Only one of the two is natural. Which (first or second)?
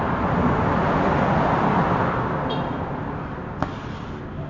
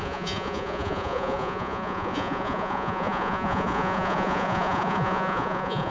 first